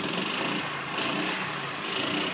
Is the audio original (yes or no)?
yes